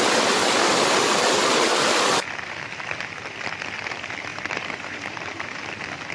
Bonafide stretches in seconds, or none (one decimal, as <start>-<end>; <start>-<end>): 0.0-4.3; 5.6-6.1